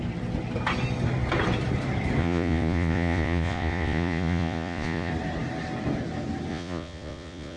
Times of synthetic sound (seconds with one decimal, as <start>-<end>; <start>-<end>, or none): 2.2-5.1; 6.5-7.6

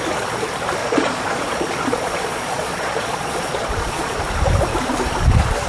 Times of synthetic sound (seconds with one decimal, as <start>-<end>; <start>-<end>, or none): 0.8-4.2

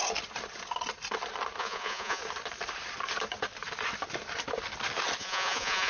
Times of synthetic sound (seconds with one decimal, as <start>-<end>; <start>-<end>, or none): 1.6-2.2; 5.2-5.9

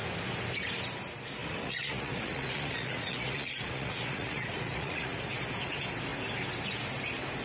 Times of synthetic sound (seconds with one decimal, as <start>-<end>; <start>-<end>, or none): 1.4-5.4

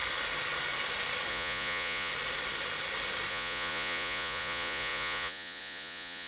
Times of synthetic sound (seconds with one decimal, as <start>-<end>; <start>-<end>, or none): 1.3-2.1; 3.3-6.3

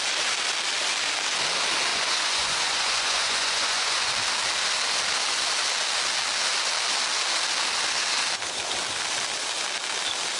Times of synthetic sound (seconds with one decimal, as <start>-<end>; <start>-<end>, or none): 1.9-4.1

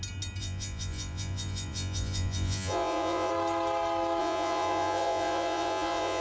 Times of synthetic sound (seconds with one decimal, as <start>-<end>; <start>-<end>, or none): 0.4-3.3; 4.2-6.2